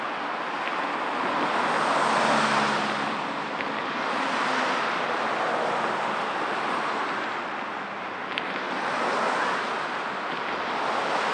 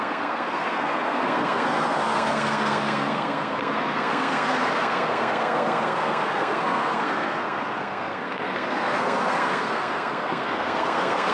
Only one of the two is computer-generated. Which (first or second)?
second